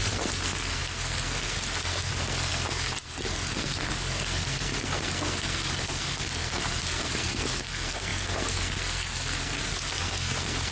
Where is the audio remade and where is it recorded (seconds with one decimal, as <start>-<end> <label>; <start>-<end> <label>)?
0.0-10.7 remade